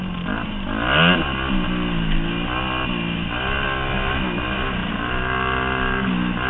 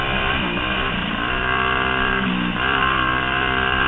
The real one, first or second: first